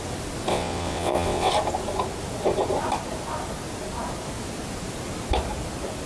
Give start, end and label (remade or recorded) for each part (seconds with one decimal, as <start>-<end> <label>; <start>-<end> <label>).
0.0-0.5 recorded; 0.5-1.5 remade; 1.5-6.1 recorded